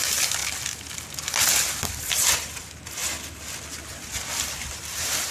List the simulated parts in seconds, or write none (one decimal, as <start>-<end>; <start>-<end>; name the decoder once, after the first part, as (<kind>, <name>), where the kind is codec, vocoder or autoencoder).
0.0-0.4 (vocoder, BigVGAN v2); 2.1-3.0; 4.4-5.3